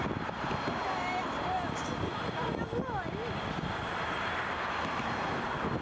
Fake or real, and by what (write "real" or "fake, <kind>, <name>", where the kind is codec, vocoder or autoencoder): real